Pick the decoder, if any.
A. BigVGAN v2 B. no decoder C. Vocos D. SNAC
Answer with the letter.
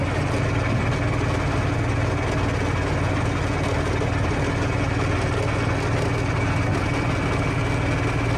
B